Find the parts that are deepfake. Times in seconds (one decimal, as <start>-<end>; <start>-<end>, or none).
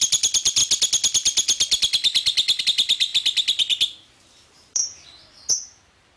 0.0-0.6; 2.6-3.1; 4.2-4.8; 5.5-6.2